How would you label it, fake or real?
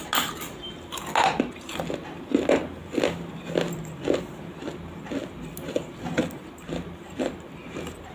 real